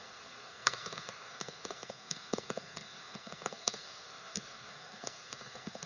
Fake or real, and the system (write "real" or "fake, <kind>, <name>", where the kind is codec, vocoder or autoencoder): fake, codec, SNAC